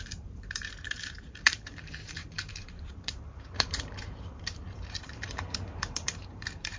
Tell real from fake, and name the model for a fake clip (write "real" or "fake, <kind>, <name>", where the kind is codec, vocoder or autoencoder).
fake, vocoder, BigVGAN v2